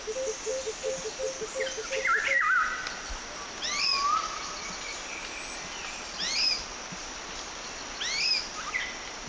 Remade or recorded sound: recorded